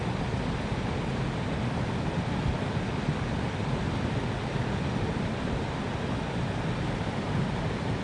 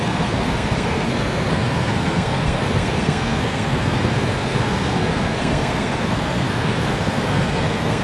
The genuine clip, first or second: first